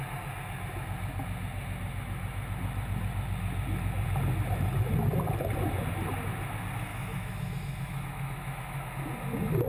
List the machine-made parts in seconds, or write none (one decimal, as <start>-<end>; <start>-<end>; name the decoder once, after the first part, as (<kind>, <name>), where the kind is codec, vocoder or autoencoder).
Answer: 6.9-8.9 (autoencoder, DAC-VAE)